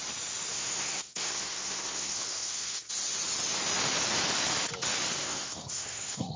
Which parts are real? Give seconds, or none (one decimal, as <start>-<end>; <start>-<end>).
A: 0.0-0.5; 2.9-5.2